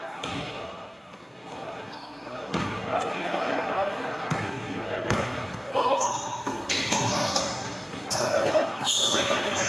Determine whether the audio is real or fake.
fake